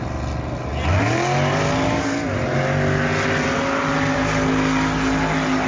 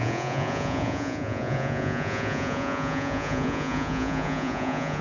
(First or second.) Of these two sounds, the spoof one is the second